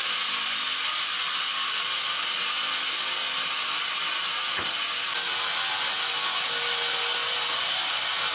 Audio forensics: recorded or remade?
recorded